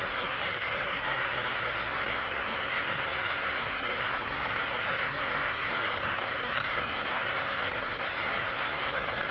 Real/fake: fake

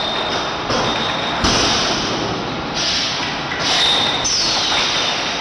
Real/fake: real